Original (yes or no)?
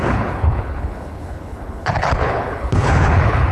no